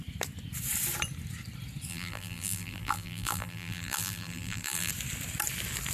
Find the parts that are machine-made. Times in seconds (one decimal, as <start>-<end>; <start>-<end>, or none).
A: 1.9-4.9